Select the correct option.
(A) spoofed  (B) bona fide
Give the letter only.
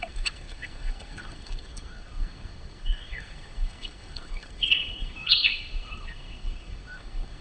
A